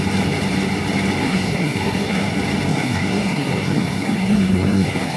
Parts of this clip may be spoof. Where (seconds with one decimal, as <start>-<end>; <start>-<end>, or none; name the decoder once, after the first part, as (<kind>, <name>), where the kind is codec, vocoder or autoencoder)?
1.2-2.3 (codec, SNAC); 2.7-5.2